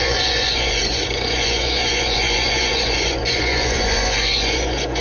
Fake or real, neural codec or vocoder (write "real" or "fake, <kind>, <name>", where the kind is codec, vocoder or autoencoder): fake, vocoder, Vocos